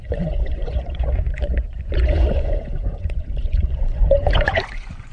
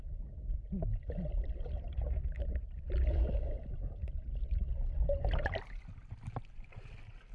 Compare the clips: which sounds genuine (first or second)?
second